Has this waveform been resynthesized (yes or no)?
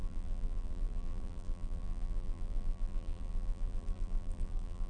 yes